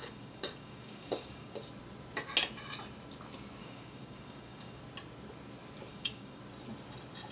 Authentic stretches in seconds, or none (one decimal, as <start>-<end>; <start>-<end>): 1.6-3.6; 4.8-5.9; 6.4-7.3